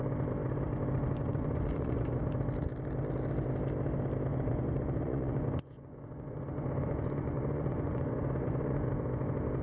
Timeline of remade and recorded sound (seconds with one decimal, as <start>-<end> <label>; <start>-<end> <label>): 0.0-1.0 recorded; 1.0-2.2 remade; 2.2-4.3 recorded; 4.3-8.9 remade; 8.9-9.6 recorded